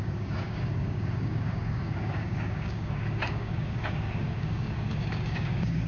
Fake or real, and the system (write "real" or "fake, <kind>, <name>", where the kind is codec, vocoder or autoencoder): fake, codec, DAC